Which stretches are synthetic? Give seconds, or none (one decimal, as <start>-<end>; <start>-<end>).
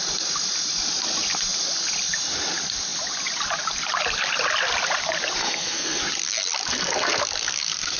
5.4-6.0; 6.7-7.2